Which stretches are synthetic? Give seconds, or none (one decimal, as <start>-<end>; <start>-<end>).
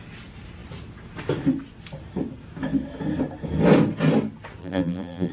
4.6-5.3